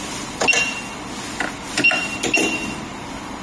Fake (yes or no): no